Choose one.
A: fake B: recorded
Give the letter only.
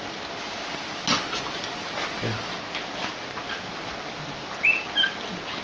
B